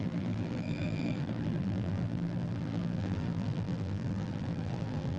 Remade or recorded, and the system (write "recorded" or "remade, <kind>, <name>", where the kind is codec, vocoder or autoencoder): remade, vocoder, BigVGAN v2